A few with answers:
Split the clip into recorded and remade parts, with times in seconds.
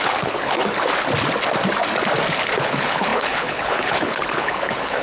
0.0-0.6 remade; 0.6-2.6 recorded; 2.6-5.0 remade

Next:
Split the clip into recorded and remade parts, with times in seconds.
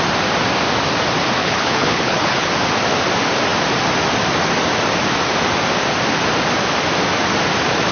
0.0-1.4 recorded; 1.4-2.5 remade; 2.5-7.9 recorded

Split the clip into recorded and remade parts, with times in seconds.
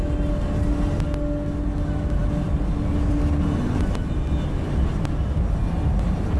0.0-6.4 recorded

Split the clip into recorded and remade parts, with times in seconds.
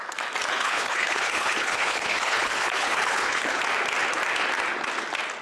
0.0-0.5 recorded; 0.5-3.6 remade; 3.6-5.4 recorded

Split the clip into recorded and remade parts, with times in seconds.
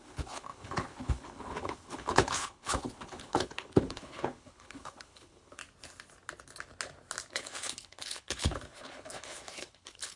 0.0-5.6 remade; 5.6-7.3 recorded; 7.3-10.2 remade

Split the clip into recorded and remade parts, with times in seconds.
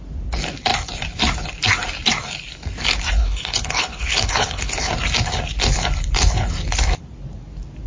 0.0-3.2 recorded; 3.2-4.9 remade; 4.9-7.9 recorded